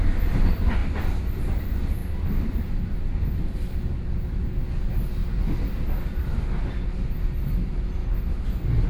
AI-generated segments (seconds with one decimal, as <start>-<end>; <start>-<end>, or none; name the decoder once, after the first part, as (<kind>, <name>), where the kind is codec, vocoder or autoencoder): none